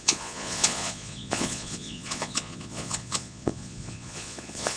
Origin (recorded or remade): remade